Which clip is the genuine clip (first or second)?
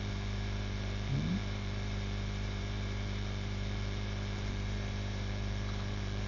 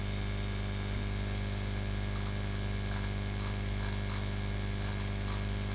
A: second